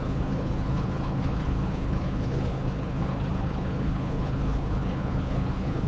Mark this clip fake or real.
fake